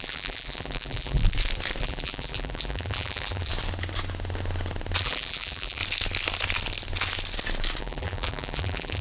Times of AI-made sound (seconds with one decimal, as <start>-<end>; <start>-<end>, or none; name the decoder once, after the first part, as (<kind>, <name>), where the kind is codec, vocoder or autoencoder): 0.0-1.2 (vocoder, BigVGAN v2); 1.8-3.5; 5.0-5.8; 7.8-9.0